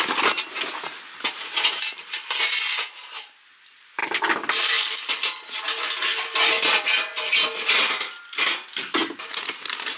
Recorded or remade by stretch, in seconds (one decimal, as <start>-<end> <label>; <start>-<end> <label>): 0.0-4.0 recorded; 4.0-5.6 remade; 5.6-10.0 recorded